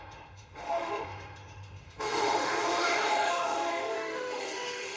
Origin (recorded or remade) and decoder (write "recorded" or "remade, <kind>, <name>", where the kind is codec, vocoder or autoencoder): remade, autoencoder, DAC-VAE